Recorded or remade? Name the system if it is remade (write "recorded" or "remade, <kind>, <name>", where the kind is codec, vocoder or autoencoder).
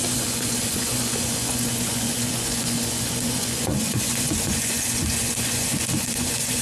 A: remade, vocoder, Vocos